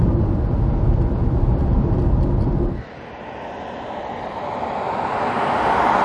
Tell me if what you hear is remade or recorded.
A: recorded